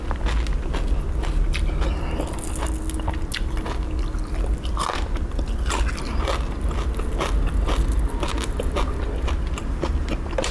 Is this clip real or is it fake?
real